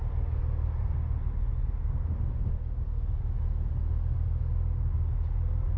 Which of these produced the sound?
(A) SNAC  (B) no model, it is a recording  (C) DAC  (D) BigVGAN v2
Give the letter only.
B